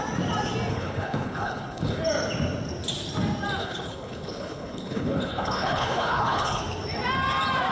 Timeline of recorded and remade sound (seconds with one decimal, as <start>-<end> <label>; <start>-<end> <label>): 0.0-0.7 recorded; 0.7-2.0 remade; 2.0-3.6 recorded; 3.6-6.6 remade; 6.6-7.7 recorded